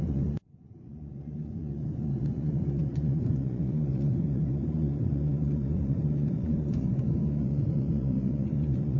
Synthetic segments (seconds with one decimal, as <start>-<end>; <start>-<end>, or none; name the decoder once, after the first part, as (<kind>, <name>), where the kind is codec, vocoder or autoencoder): 0.0-9.0 (vocoder, Vocos)